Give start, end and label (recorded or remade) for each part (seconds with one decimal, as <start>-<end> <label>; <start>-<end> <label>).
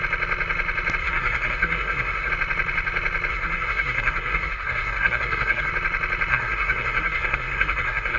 0.0-1.0 recorded; 1.0-2.3 remade; 2.3-3.3 recorded; 3.3-5.7 remade; 5.7-6.3 recorded; 6.3-8.2 remade